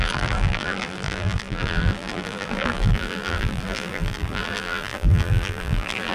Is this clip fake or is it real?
fake